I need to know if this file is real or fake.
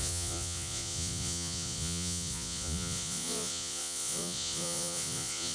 fake